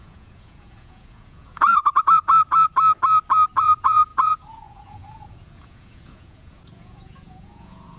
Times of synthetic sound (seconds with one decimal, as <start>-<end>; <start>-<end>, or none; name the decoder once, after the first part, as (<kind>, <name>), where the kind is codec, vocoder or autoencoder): 0.0-2.7 (vocoder, Vocos); 3.6-8.0